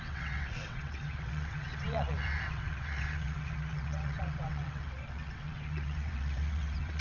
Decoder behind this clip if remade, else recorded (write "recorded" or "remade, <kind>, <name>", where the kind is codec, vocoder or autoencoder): remade, vocoder, WaveNeXt